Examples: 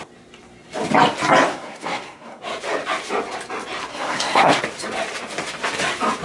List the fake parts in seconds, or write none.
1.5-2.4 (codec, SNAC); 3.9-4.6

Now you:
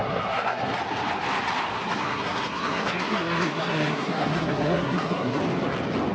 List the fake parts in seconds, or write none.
0.0-0.8 (codec, SNAC); 1.7-5.4

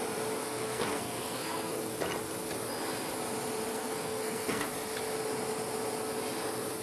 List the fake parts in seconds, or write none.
0.4-1.9 (codec, SNAC); 3.7-4.7

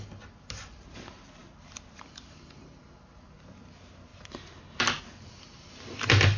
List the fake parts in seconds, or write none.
none

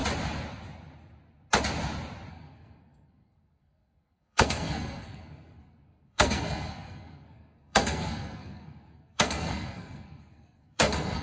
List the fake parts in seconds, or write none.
2.3-11.2 (codec, SNAC)

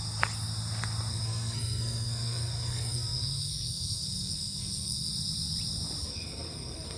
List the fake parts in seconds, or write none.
1.1-5.1 (codec, SNAC); 6.0-7.0

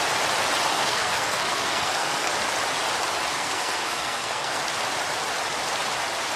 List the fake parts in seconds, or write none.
0.7-2.3 (codec, SNAC); 3.3-4.6